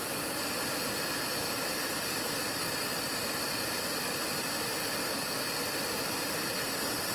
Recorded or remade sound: recorded